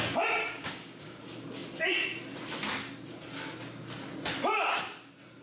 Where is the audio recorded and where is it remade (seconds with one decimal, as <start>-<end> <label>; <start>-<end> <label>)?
0.0-0.4 recorded; 0.4-1.2 remade; 1.2-5.4 recorded